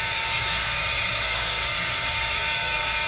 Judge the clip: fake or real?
fake